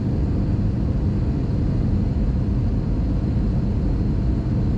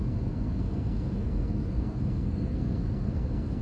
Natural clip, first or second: first